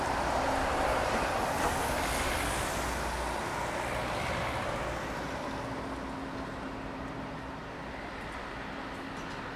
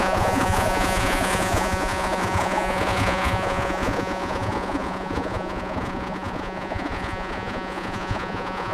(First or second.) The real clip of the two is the first